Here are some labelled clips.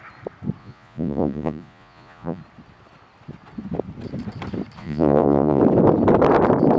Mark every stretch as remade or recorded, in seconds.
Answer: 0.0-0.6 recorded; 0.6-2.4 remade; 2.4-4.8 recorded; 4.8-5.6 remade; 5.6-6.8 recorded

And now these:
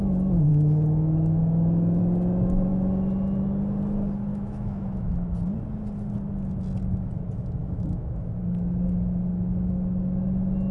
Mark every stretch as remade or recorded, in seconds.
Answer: 0.0-0.5 recorded; 0.5-2.0 remade; 2.0-4.3 recorded; 4.3-5.1 remade; 5.1-7.6 recorded; 7.6-8.4 remade; 8.4-10.7 recorded